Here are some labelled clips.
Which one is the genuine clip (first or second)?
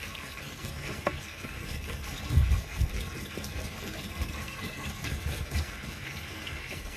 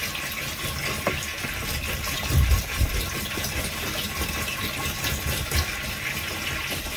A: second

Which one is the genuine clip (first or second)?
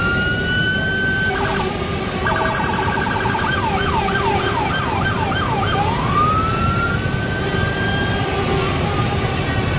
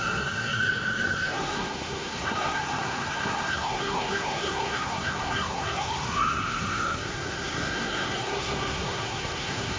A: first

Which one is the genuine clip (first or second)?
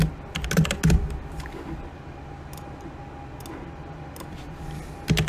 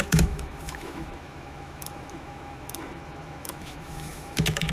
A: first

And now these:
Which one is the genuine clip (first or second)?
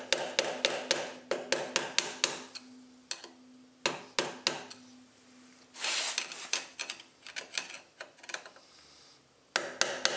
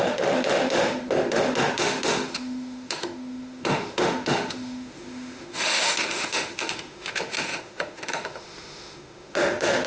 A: first